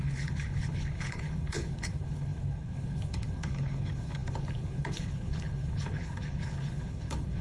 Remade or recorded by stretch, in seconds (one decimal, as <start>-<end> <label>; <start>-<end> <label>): 0.0-7.4 remade